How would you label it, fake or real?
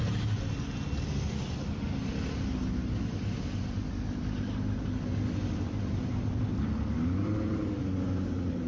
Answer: real